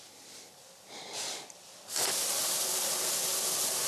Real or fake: real